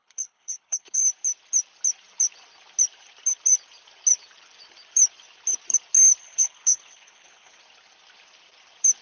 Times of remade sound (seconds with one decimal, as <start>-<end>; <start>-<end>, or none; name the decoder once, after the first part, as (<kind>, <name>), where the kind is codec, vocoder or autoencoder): 0.0-1.0 (codec, HILCodec); 6.2-7.6